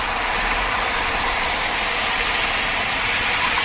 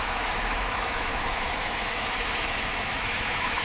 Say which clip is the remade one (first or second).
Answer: second